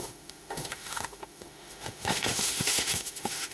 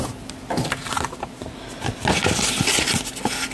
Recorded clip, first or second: second